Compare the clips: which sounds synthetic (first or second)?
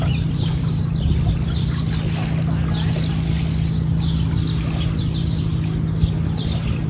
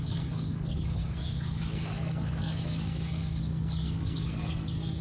second